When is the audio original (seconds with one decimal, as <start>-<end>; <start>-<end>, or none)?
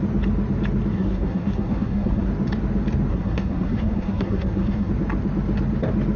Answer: 0.0-0.9; 2.3-3.1; 4.9-6.2